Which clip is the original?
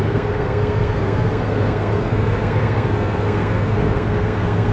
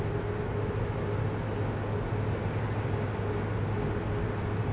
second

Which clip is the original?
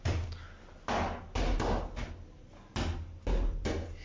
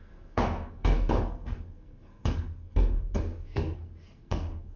first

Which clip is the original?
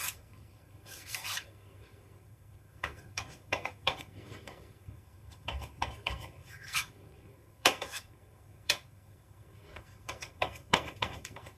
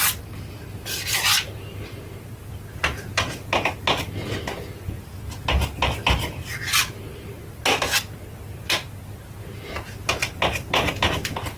second